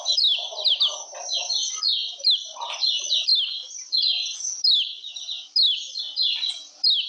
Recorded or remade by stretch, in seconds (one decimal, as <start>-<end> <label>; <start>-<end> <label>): 0.0-7.1 recorded